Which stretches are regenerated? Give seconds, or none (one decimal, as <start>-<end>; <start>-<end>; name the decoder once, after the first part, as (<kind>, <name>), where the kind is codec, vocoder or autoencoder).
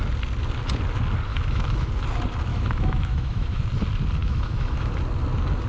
1.3-1.9 (autoencoder, DAC-VAE); 2.5-3.6; 4.2-4.9